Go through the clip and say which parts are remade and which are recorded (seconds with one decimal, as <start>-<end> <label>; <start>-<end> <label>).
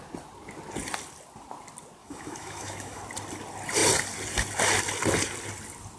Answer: 0.0-2.0 recorded; 2.0-3.0 remade; 3.0-6.0 recorded